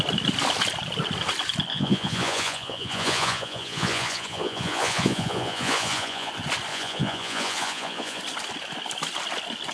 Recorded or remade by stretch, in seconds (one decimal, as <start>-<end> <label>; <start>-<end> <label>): 0.0-1.7 recorded; 1.7-6.3 remade; 6.3-6.7 recorded; 6.7-8.2 remade; 8.2-9.7 recorded